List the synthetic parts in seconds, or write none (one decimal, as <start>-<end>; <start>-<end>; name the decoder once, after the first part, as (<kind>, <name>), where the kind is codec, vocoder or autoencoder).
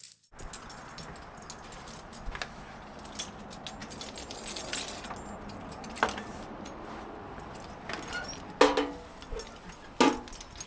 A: none